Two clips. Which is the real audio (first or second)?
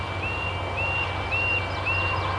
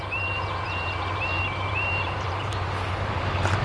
first